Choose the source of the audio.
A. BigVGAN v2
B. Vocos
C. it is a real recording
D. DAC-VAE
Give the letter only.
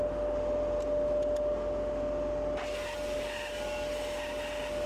C